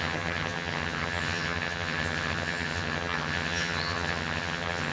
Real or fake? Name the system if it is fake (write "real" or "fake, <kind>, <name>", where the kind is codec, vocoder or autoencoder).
fake, vocoder, HiFi-GAN